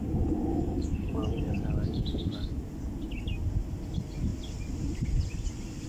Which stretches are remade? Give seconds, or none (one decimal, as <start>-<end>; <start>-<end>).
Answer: 0.5-2.6